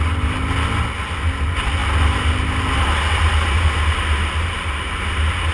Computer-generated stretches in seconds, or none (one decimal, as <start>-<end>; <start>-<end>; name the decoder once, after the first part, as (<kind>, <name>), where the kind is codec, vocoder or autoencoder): none